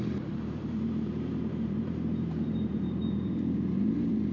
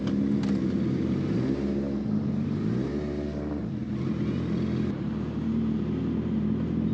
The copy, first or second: first